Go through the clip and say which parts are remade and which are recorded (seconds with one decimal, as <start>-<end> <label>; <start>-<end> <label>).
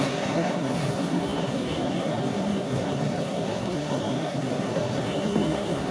0.0-5.9 remade